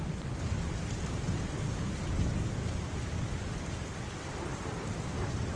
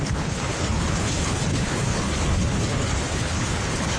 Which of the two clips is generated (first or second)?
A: second